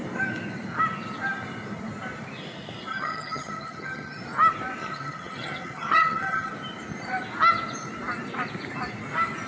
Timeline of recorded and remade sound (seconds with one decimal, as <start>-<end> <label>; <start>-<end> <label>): 0.0-2.9 recorded; 2.9-4.2 remade; 4.2-4.8 recorded; 4.8-6.5 remade; 6.5-9.5 recorded